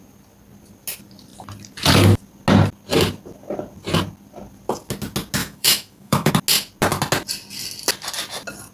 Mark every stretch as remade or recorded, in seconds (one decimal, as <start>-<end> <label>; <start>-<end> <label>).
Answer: 0.0-5.4 recorded; 5.4-6.3 remade; 6.3-8.7 recorded